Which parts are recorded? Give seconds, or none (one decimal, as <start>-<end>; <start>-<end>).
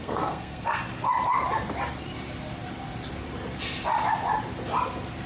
0.8-5.3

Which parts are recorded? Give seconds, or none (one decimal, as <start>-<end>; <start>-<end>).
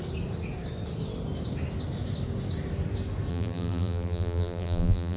0.0-3.3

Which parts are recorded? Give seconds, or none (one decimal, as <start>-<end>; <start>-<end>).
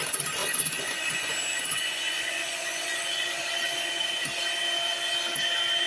0.0-0.4; 3.9-5.9